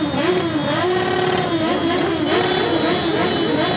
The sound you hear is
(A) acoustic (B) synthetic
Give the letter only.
A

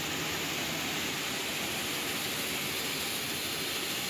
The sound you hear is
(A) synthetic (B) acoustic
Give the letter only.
B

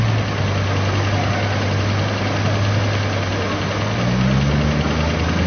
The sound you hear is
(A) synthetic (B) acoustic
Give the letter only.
B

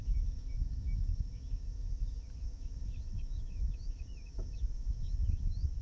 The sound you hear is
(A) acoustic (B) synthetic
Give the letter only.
B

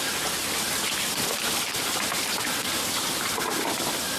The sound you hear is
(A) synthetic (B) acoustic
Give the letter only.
B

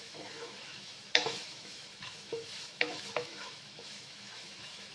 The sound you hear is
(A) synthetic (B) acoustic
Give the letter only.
A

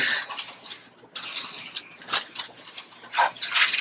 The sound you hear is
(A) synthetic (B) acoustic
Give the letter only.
B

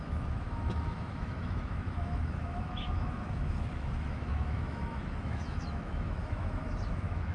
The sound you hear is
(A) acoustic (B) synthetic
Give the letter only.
B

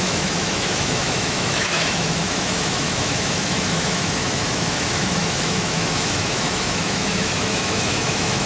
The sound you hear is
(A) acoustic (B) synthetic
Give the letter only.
B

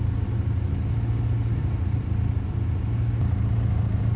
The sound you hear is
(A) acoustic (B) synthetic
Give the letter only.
A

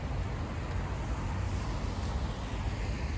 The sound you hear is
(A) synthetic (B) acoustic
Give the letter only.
B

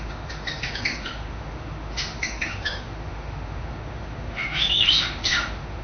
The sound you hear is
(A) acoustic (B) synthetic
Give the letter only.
B